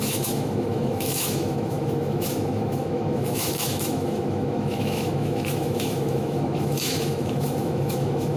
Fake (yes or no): yes